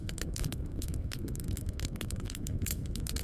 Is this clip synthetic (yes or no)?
yes